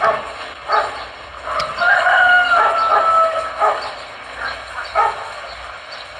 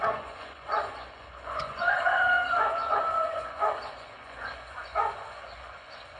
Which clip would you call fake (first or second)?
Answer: second